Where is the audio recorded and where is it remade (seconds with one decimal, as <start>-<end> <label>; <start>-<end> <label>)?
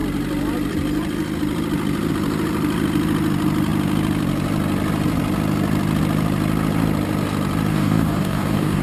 0.0-7.7 recorded; 7.7-8.8 remade